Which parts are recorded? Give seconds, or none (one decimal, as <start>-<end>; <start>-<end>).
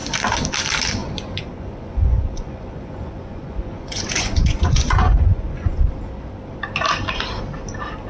0.0-1.0; 5.9-8.1